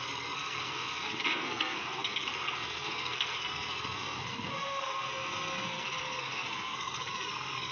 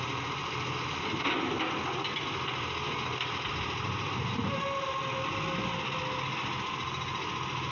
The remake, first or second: first